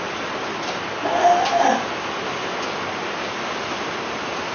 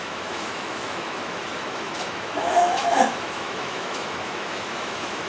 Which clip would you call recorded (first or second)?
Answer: first